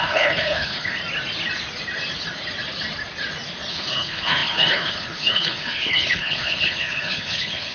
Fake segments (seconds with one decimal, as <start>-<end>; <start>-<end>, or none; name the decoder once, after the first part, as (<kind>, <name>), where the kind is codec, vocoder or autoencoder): 0.0-1.0 (codec, HILCodec); 3.7-7.7